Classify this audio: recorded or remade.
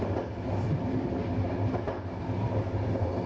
recorded